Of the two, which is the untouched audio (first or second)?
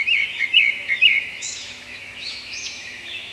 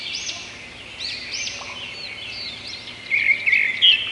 second